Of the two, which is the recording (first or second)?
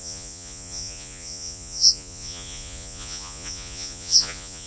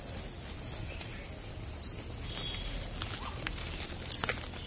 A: second